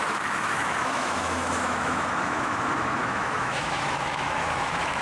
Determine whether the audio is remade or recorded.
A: remade